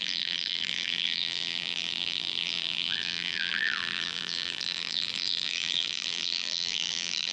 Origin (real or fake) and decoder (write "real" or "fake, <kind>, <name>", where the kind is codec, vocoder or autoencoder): fake, vocoder, BigVGAN v2